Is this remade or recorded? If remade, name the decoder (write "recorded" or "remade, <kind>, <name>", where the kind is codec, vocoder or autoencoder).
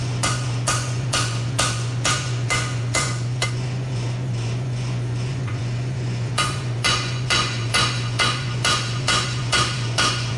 remade, vocoder, Vocos